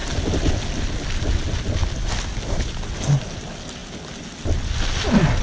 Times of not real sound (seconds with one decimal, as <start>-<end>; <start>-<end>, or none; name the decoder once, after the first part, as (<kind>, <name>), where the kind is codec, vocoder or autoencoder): none